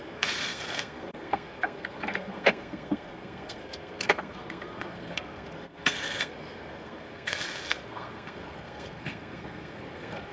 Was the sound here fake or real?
fake